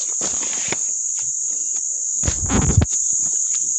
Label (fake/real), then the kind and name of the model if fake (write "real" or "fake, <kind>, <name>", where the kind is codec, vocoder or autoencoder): real